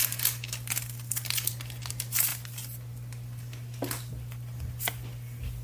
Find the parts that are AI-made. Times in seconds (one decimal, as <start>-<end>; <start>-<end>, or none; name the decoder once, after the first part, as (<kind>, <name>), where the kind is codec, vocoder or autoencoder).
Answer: none